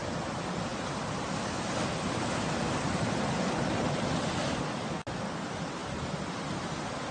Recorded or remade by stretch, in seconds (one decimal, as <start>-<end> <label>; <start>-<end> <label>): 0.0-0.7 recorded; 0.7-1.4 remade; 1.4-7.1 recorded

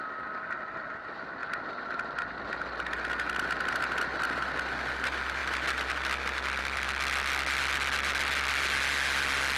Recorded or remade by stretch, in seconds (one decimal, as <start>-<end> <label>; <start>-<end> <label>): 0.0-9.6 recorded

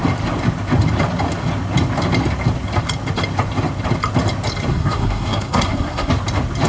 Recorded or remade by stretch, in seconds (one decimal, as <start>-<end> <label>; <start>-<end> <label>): 0.0-4.7 recorded; 4.7-6.1 remade; 6.1-6.7 recorded